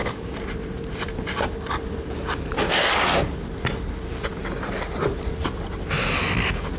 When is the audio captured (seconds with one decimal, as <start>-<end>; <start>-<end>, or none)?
4.3-5.7